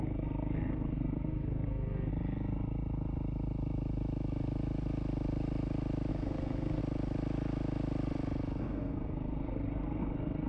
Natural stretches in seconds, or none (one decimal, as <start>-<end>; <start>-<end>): 2.1-6.1; 6.8-8.6